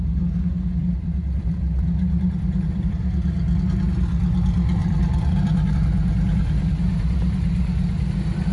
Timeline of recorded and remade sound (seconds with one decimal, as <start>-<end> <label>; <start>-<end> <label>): 0.0-0.8 recorded; 0.8-2.9 remade; 2.9-4.8 recorded; 4.8-5.7 remade; 5.7-8.5 recorded